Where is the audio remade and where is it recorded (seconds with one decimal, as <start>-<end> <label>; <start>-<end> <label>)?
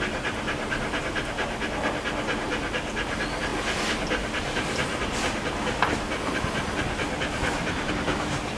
0.0-8.6 recorded